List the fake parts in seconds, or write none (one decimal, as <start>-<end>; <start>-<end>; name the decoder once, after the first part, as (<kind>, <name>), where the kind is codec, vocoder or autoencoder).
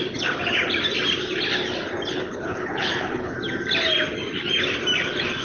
2.1-3.4 (codec, HILCodec)